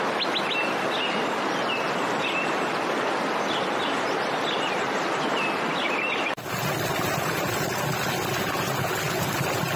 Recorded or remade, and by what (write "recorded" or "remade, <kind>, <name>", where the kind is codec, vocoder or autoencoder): recorded